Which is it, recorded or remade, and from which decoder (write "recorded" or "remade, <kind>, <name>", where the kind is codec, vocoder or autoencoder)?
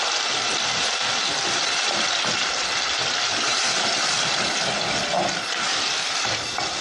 recorded